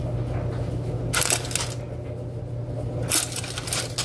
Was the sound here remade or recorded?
recorded